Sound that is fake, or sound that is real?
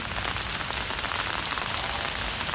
real